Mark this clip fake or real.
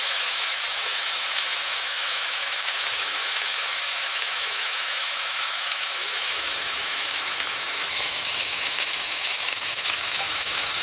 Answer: fake